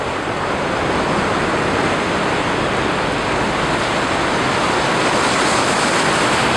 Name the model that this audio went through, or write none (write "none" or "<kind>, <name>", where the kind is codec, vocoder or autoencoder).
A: none